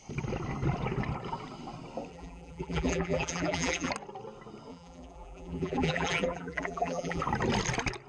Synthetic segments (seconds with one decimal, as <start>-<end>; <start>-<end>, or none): 2.1-3.9; 4.7-7.2